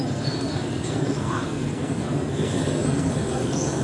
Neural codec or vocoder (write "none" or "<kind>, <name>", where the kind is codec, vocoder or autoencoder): codec, SNAC